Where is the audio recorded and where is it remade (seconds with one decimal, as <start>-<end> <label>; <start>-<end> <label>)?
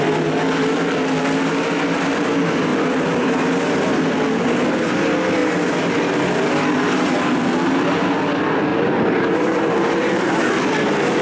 0.0-5.4 recorded; 5.4-6.0 remade; 6.0-8.7 recorded; 8.7-10.5 remade; 10.5-11.2 recorded